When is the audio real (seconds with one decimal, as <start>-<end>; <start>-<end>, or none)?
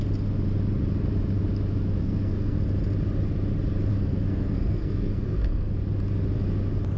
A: 0.0-2.0; 2.6-3.9; 5.7-7.0